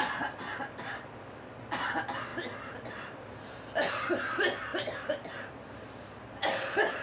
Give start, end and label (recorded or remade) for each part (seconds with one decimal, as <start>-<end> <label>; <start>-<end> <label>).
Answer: 0.0-4.7 recorded; 4.7-5.5 remade; 5.5-7.0 recorded